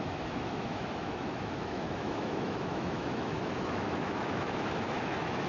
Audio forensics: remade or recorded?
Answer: remade